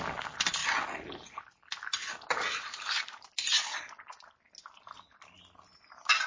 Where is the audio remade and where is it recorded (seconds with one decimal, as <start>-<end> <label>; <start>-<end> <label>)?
0.0-6.3 recorded